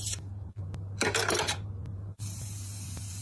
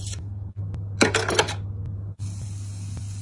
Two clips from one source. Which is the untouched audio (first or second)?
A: second